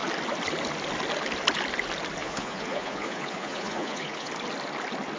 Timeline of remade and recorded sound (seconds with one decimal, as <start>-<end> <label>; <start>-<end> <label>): 0.0-2.2 recorded; 2.2-4.3 remade; 4.3-5.2 recorded